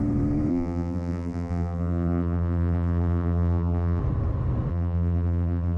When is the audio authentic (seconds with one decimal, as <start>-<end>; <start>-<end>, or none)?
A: 0.0-0.5; 4.0-4.7